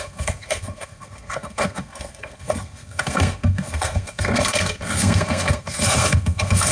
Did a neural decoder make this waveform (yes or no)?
yes